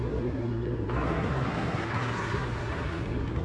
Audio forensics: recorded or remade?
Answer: remade